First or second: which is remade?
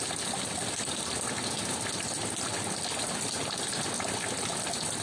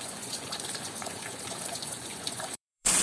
second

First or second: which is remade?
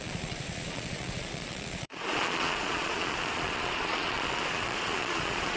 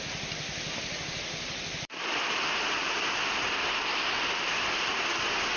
first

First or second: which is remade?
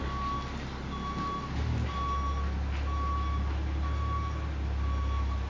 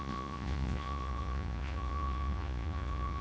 second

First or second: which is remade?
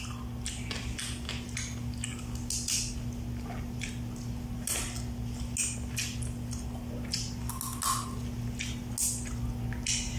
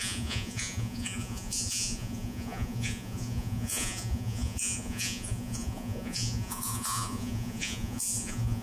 second